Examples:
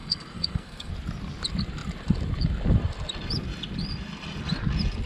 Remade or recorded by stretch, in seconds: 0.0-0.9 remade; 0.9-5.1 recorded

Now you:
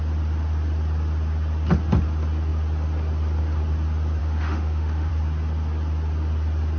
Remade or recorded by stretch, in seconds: 0.0-4.2 recorded; 4.2-5.1 remade; 5.1-6.8 recorded

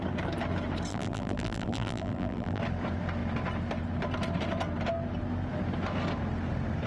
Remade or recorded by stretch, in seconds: 0.0-0.9 recorded; 0.9-2.6 remade; 2.6-6.9 recorded

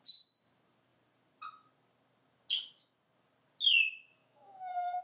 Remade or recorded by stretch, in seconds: 0.0-4.2 recorded; 4.2-5.0 remade

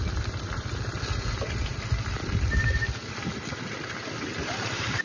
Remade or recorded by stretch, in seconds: 0.0-5.0 recorded